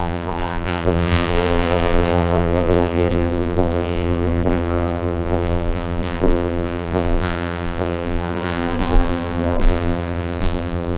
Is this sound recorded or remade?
remade